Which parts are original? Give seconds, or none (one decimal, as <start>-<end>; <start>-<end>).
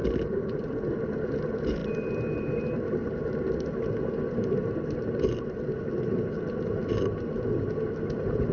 0.0-8.5